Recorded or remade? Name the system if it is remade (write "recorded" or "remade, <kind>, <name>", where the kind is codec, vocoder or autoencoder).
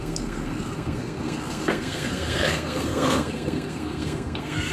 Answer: remade, codec, SNAC